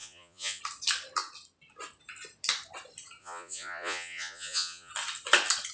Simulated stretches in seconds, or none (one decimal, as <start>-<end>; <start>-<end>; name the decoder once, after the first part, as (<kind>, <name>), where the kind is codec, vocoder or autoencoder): 0.0-0.6 (vocoder, Vocos); 3.2-4.9

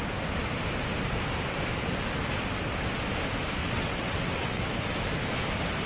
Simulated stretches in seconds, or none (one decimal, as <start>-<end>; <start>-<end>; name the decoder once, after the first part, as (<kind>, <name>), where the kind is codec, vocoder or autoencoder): 3.6-4.7 (vocoder, WaveNeXt)

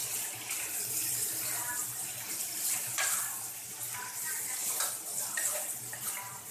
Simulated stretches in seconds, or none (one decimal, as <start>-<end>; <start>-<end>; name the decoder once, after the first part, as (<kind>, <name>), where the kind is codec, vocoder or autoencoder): 0.0-6.5 (vocoder, BigVGAN v2)

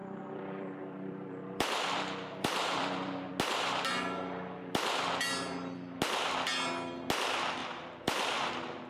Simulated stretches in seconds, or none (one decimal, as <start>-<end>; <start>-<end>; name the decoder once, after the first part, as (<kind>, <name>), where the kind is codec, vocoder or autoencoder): 0.0-3.3 (vocoder, BigVGAN v2); 7.6-8.5

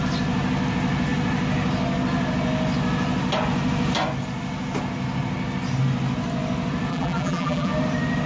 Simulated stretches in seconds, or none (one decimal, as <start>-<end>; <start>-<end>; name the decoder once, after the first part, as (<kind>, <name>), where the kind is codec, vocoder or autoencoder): 6.9-7.7 (vocoder, BigVGAN v2)

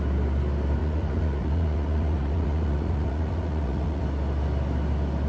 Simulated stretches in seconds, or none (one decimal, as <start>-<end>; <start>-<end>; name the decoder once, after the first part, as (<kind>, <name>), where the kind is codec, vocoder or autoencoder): 0.8-4.0 (vocoder, Vocos)